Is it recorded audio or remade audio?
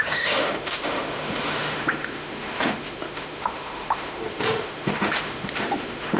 remade